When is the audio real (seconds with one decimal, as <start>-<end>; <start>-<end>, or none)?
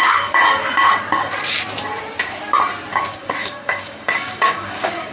0.4-2.9